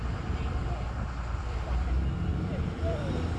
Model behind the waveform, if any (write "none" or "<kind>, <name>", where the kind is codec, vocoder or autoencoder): vocoder, BigVGAN v2